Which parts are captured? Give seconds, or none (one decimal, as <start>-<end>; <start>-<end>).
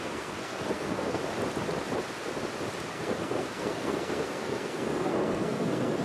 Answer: 1.2-2.9